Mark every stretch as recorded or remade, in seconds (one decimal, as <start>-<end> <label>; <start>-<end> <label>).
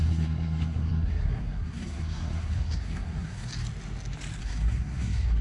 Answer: 0.0-3.5 remade; 3.5-4.4 recorded; 4.4-5.4 remade